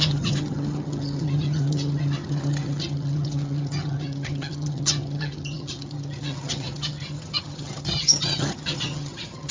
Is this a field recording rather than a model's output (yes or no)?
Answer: no